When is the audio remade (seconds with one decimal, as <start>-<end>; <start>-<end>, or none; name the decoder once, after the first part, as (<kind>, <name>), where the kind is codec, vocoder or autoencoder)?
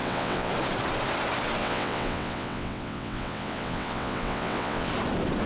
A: 0.0-0.5 (vocoder, WaveNeXt); 1.6-4.9